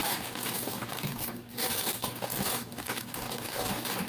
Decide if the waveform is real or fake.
fake